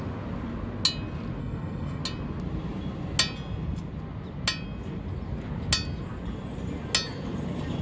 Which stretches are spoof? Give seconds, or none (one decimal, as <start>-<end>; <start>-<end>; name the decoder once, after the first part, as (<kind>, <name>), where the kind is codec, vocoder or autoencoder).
1.4-2.0 (codec, SNAC)